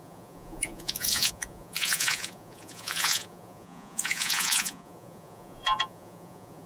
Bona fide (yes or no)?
no